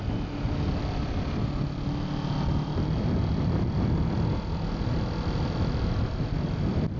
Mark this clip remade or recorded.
recorded